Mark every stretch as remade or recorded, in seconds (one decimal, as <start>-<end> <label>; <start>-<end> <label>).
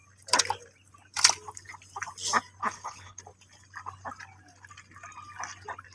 0.0-2.6 recorded; 2.6-3.2 remade; 3.2-5.9 recorded